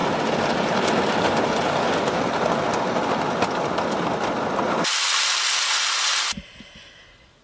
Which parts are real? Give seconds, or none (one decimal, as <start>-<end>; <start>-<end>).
0.0-7.4